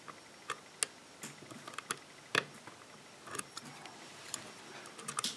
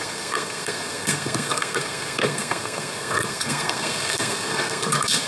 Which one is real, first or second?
first